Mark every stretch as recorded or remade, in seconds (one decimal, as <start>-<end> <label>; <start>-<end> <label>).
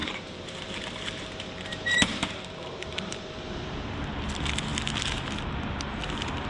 0.0-3.3 remade; 3.3-6.5 recorded